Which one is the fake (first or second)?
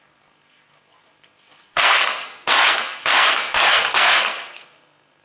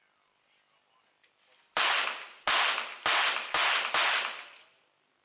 first